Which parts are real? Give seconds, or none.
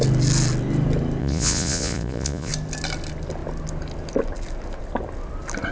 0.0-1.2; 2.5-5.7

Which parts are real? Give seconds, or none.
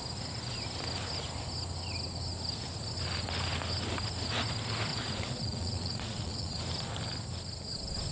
0.0-4.9; 6.6-8.1